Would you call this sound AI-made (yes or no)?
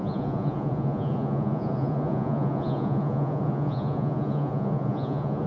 yes